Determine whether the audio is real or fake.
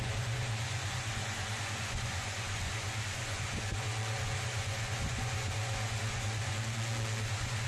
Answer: fake